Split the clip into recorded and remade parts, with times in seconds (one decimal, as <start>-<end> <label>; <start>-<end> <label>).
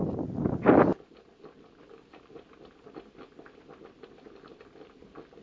0.0-5.4 recorded